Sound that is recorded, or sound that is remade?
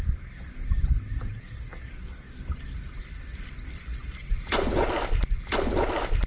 recorded